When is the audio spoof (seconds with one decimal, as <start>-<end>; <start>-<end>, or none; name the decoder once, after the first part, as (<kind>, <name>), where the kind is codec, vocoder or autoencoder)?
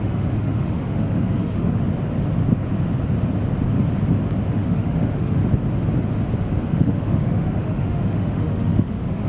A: 0.0-1.9 (autoencoder, DAC-VAE); 4.5-5.4; 6.7-9.3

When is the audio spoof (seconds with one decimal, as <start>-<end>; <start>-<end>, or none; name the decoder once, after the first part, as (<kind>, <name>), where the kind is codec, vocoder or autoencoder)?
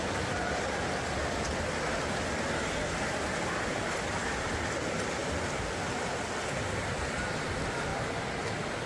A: none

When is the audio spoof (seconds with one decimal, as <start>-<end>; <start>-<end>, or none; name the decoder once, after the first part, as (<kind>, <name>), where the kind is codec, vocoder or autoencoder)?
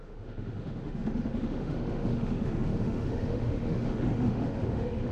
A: 0.0-5.1 (autoencoder, DAC-VAE)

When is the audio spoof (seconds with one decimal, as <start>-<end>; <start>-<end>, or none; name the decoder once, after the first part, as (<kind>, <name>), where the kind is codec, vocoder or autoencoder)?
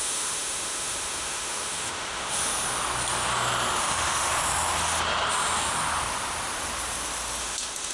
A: 0.0-2.5 (autoencoder, DAC-VAE); 3.8-4.3; 7.4-7.9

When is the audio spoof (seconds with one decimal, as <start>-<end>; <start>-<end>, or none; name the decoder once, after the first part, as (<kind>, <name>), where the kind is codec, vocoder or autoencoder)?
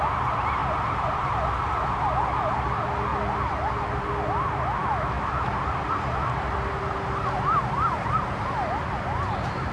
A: 4.8-5.5 (autoencoder, DAC-VAE)